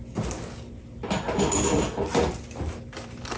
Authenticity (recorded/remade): recorded